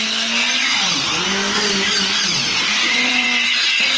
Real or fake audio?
real